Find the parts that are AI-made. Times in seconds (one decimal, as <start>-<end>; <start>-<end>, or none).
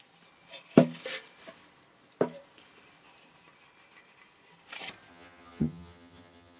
5.1-6.6